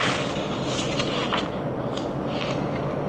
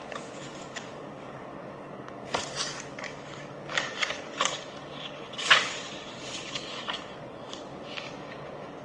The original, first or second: first